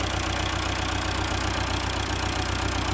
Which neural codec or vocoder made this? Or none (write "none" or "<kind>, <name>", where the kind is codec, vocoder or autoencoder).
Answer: none